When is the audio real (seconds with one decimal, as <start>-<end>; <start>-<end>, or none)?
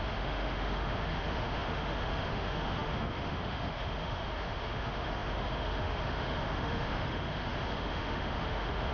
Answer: none